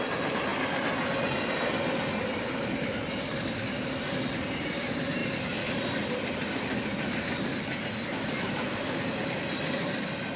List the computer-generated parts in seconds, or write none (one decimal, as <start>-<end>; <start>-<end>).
none